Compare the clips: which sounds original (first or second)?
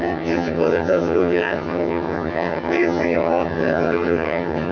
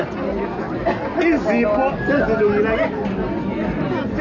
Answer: second